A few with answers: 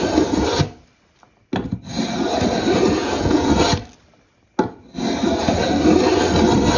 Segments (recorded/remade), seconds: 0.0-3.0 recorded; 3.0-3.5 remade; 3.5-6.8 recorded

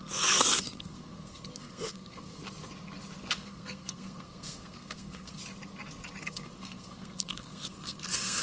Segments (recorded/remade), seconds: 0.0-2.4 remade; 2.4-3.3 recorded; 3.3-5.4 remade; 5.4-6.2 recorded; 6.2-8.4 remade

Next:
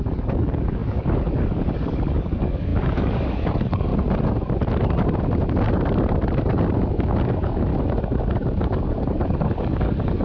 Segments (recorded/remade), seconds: 0.0-3.9 remade; 3.9-6.9 recorded; 6.9-7.7 remade; 7.7-8.6 recorded; 8.6-10.2 remade